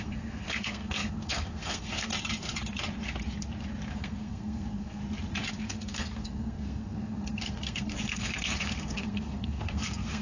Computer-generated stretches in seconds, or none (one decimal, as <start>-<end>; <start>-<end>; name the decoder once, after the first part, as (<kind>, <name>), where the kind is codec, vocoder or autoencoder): 0.0-2.1 (codec, SNAC); 3.9-5.0; 5.5-10.2